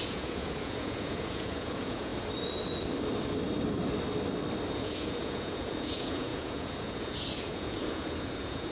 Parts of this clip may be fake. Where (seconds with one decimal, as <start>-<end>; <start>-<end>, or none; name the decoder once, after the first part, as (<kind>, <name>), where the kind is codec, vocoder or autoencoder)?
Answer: 0.0-2.1 (vocoder, Vocos); 4.7-8.7